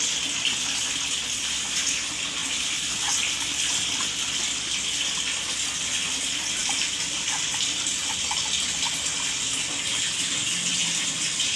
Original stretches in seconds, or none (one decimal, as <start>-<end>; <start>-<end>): 0.0-10.7